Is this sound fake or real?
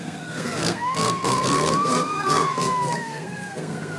fake